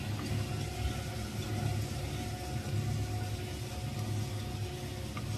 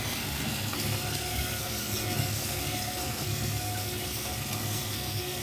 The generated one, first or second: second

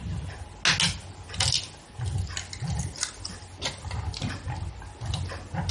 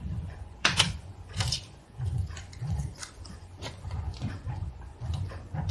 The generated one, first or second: second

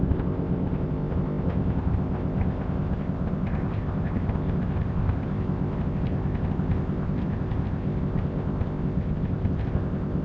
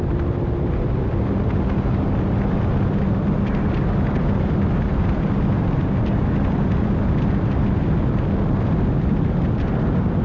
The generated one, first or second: first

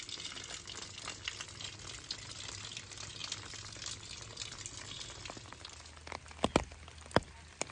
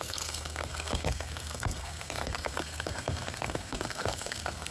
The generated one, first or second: second